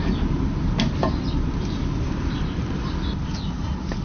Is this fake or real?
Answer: real